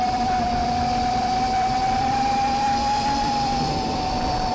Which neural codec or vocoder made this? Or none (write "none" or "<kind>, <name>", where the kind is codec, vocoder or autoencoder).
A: vocoder, BigVGAN v2